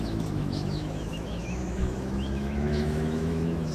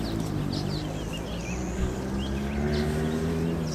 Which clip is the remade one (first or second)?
first